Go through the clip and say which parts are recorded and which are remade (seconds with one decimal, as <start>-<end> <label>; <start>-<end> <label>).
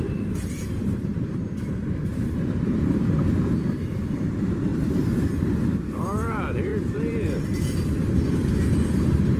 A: 0.0-9.4 remade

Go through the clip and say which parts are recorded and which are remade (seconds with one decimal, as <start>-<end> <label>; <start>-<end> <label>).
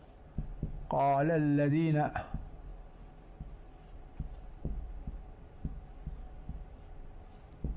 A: 0.0-7.8 recorded